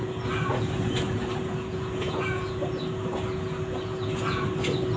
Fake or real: fake